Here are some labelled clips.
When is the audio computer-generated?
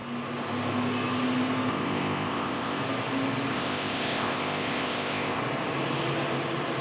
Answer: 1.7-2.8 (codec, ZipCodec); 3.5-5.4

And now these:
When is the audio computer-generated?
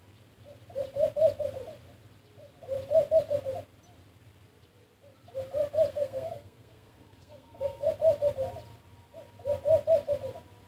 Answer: 5.9-7.9 (codec, SNAC)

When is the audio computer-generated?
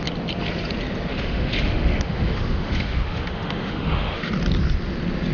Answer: 1.1-4.3 (autoencoder, DAC-VAE)